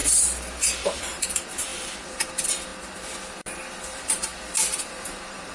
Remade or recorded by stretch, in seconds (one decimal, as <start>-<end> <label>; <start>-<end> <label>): 0.0-2.7 remade; 2.7-3.8 recorded; 3.8-4.3 remade; 4.3-4.9 recorded; 4.9-5.5 remade